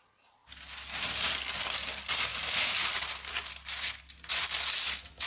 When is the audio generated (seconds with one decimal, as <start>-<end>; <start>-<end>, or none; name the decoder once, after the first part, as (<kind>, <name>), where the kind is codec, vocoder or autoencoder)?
none